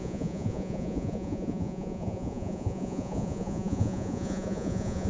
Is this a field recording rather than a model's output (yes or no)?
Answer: no